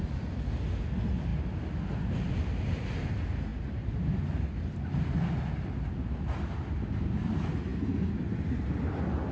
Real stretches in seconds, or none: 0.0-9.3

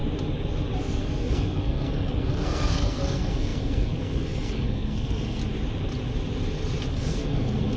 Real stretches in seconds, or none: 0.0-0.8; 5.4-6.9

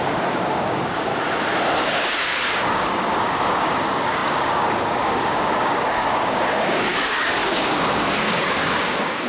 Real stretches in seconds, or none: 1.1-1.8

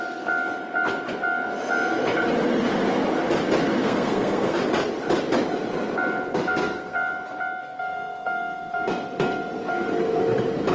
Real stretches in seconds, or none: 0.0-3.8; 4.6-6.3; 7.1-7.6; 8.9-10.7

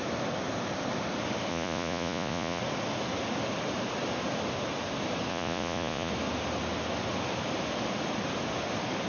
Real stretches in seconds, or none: 0.0-1.5; 2.6-5.3; 6.1-9.1